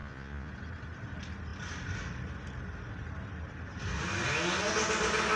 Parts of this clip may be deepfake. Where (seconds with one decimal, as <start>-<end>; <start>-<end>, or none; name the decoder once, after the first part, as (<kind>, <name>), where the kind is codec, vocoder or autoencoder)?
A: 0.0-0.5 (vocoder, Vocos)